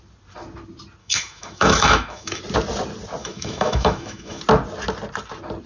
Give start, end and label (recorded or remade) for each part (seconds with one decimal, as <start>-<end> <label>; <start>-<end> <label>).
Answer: 0.0-1.0 recorded; 1.0-2.4 remade; 2.4-3.2 recorded; 3.2-4.4 remade; 4.4-5.7 recorded